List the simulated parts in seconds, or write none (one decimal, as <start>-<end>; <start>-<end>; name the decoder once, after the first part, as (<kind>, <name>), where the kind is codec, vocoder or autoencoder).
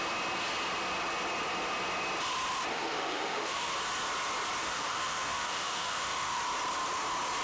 2.7-3.7 (autoencoder, DAC-VAE); 4.6-6.4